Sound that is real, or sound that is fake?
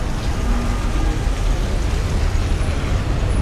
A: real